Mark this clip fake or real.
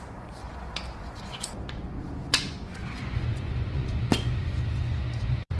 fake